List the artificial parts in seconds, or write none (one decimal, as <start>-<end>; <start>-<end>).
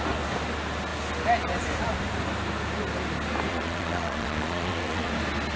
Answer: 3.5-5.1